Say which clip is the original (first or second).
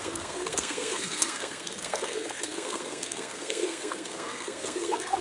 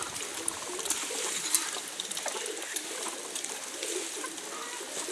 second